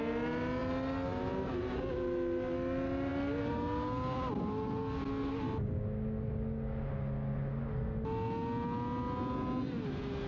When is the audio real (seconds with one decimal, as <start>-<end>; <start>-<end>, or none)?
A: 0.0-10.3